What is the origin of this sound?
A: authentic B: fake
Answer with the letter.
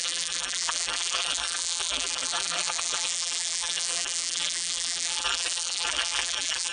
B